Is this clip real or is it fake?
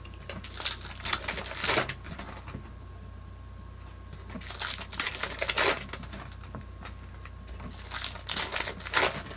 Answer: real